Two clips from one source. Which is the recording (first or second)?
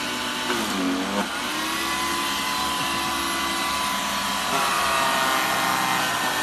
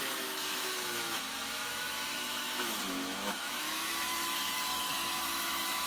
first